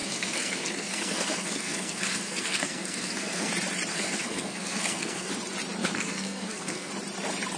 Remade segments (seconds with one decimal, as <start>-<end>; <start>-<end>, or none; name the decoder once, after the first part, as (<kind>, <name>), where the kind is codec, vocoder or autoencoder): 0.0-3.5 (codec, SNAC); 3.9-5.3; 5.8-6.9